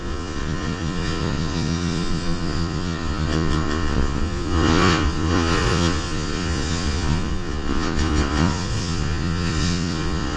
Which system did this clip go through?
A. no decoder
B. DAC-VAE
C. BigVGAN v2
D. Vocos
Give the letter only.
D